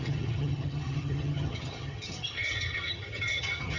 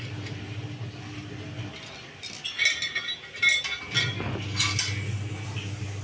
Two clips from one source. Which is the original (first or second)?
second